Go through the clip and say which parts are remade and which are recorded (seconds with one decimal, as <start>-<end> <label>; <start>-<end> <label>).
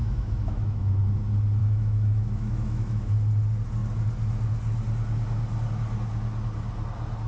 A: 0.0-1.0 remade; 1.0-1.6 recorded; 1.6-3.1 remade; 3.1-7.3 recorded